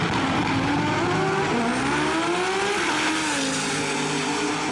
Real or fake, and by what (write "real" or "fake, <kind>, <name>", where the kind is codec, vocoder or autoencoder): real